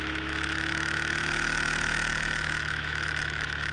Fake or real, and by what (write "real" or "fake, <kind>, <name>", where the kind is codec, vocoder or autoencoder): fake, autoencoder, DAC-VAE